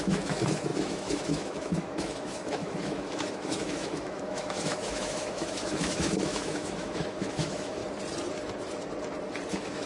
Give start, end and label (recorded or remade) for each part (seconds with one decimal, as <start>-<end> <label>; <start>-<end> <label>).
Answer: 0.0-7.8 remade; 7.8-9.5 recorded; 9.5-9.9 remade